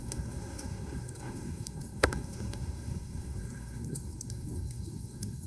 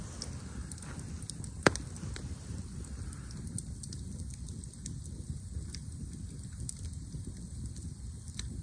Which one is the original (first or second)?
second